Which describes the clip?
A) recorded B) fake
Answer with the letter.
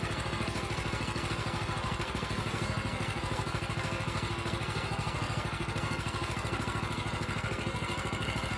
B